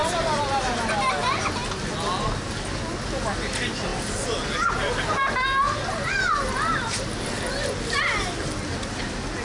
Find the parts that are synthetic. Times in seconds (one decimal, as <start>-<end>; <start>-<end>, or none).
none